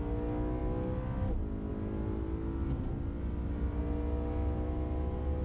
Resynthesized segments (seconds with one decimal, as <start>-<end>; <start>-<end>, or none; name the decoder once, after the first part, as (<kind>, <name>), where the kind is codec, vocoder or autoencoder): none